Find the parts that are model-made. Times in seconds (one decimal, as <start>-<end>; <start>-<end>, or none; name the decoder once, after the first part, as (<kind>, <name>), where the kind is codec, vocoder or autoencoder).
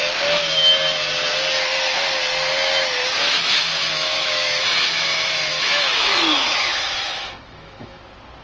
3.0-8.0 (autoencoder, DAC-VAE)